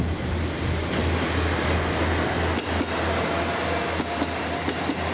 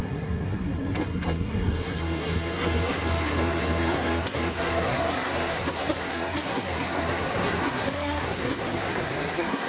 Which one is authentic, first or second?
first